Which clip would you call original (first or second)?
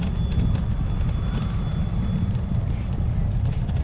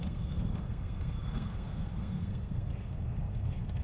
first